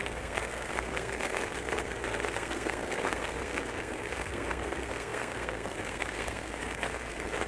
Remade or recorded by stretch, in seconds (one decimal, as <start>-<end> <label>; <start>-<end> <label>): 0.0-7.5 remade